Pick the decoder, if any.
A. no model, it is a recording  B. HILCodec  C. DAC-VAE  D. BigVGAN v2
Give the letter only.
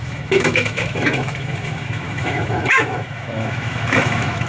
C